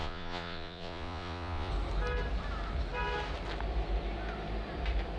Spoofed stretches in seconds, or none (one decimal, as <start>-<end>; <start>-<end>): 0.0-1.7